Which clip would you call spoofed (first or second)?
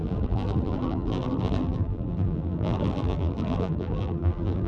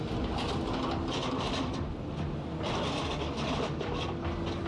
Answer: first